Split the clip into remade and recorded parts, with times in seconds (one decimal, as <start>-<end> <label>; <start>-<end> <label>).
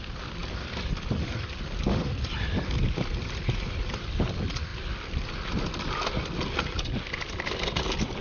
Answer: 0.0-8.2 recorded